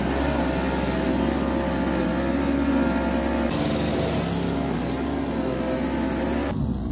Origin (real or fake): real